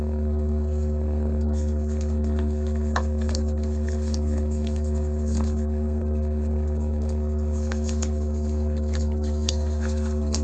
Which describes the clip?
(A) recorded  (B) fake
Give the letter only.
B